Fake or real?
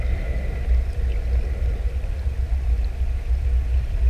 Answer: real